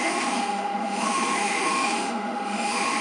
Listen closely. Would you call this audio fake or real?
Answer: fake